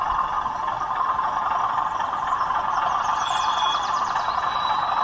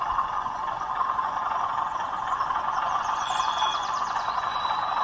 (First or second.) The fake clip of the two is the second